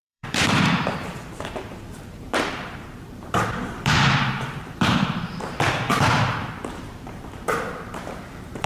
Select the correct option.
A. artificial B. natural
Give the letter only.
A